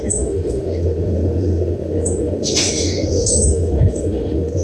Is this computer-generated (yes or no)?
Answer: yes